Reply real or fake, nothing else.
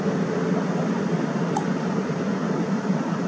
real